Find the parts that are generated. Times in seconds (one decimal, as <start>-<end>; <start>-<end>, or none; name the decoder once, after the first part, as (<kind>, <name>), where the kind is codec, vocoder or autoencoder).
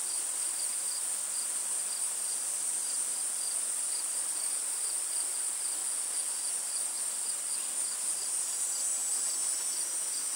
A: none